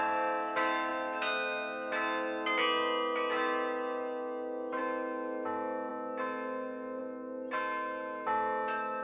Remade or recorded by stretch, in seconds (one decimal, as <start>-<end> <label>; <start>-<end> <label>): 0.0-9.0 recorded